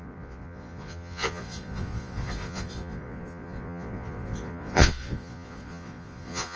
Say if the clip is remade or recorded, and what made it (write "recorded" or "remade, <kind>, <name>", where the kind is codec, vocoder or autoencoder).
remade, vocoder, Vocos